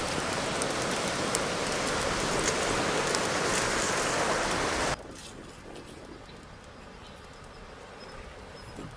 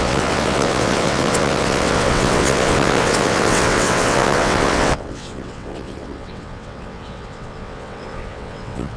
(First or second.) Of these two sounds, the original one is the first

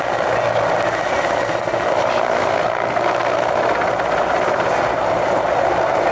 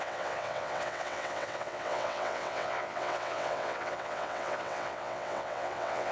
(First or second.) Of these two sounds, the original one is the first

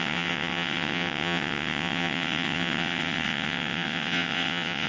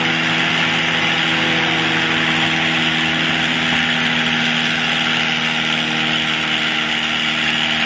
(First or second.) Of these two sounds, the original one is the second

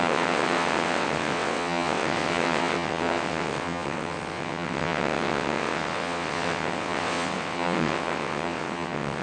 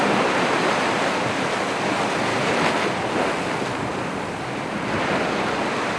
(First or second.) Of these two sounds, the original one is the second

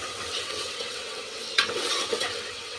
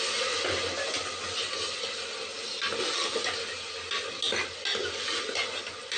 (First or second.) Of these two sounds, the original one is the second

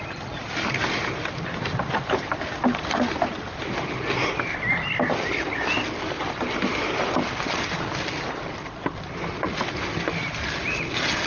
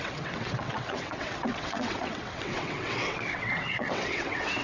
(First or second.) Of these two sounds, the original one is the first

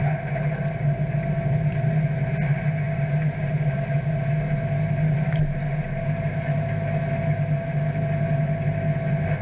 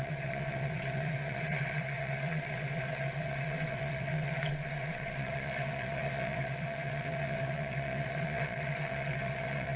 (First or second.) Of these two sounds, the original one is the first